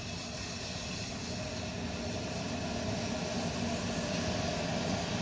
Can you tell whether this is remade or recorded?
recorded